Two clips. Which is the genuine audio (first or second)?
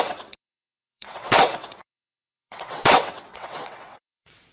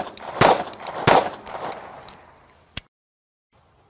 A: second